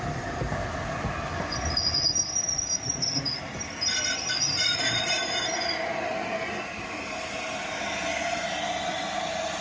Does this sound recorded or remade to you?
recorded